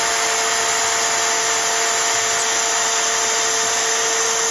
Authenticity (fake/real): real